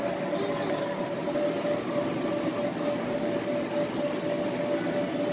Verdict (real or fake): real